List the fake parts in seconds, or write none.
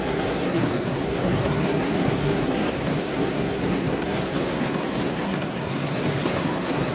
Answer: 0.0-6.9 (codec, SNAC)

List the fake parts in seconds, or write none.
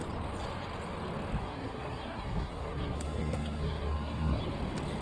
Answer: 1.4-4.4 (codec, SNAC)